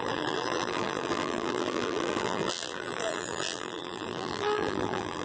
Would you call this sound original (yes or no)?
no